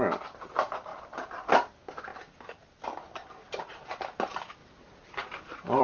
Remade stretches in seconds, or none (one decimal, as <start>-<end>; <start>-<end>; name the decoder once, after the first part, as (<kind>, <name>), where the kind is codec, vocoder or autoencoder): 0.9-1.7 (vocoder, BigVGAN v2); 4.6-5.8